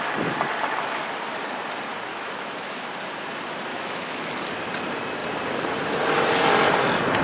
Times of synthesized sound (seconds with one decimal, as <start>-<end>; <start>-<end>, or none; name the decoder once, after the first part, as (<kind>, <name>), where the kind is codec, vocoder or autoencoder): 2.1-2.9 (autoencoder, DAC-VAE); 3.7-4.3